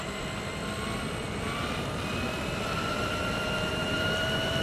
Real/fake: real